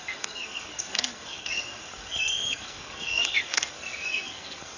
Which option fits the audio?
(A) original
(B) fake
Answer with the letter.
B